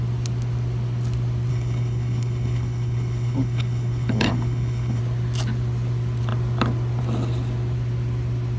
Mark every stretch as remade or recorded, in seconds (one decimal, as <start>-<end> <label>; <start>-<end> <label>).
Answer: 0.0-1.5 recorded; 1.5-5.0 remade; 5.0-8.6 recorded